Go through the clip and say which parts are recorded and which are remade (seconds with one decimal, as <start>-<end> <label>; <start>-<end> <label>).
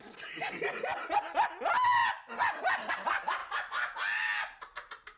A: 0.0-5.2 recorded